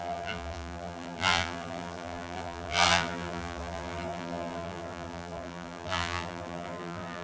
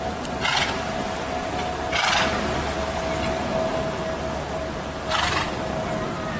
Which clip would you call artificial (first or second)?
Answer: first